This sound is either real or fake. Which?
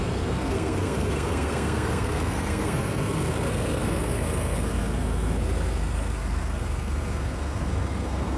fake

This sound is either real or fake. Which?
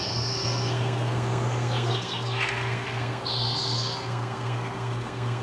fake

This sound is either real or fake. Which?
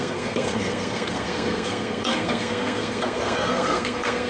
fake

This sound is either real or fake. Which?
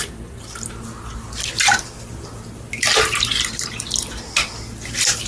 real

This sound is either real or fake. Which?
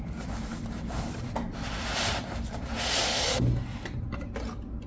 real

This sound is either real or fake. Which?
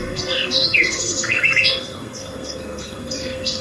fake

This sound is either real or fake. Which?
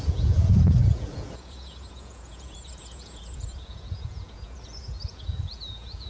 fake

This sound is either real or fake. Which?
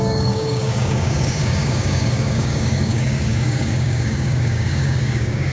fake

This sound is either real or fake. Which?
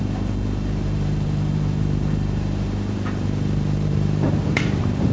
fake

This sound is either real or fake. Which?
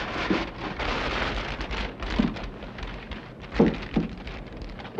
real